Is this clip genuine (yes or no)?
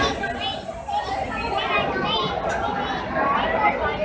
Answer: yes